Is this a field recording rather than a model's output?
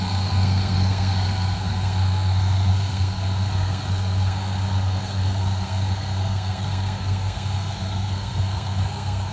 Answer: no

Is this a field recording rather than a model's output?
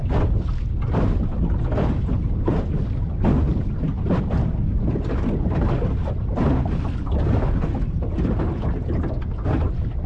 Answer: yes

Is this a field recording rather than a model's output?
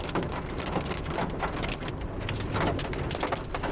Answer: yes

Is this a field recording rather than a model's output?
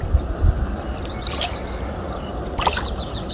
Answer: yes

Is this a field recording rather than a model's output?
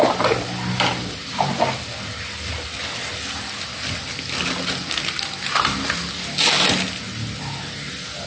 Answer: yes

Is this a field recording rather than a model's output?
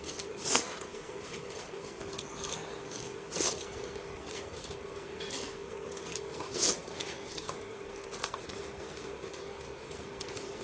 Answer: no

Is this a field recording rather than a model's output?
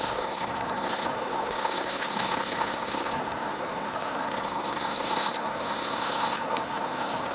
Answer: no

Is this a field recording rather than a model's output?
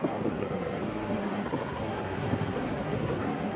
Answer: no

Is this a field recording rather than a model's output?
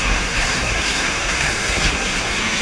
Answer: no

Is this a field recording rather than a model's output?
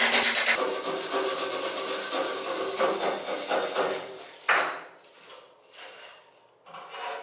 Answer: yes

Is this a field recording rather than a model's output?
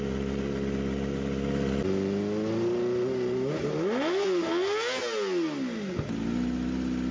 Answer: yes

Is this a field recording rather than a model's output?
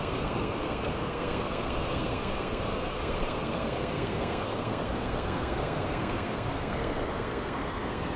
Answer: no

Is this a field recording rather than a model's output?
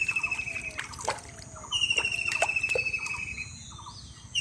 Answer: yes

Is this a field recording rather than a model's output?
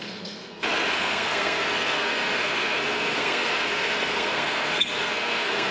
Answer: no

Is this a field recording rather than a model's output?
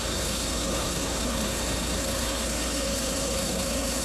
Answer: no